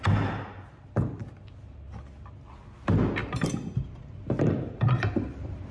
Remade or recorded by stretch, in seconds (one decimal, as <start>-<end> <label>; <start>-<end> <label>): 0.0-3.2 recorded; 3.2-4.7 remade; 4.7-5.7 recorded